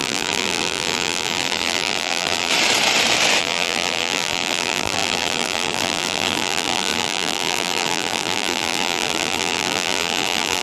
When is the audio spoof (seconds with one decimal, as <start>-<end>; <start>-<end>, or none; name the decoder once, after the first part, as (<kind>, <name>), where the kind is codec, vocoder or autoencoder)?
0.0-2.5 (vocoder, BigVGAN v2); 3.4-10.6

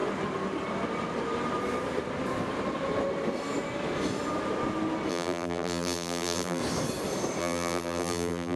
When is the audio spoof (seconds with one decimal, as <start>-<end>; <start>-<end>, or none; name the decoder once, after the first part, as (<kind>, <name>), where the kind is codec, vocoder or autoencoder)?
5.1-6.6 (vocoder, BigVGAN v2); 7.4-8.6

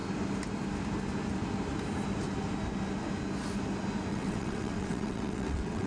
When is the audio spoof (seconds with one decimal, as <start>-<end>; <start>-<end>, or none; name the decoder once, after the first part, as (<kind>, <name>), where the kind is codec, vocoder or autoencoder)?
4.1-5.9 (vocoder, WaveNeXt)